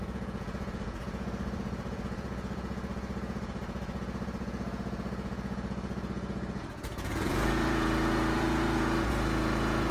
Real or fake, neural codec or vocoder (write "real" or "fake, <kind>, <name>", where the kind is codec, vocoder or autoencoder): fake, vocoder, Vocos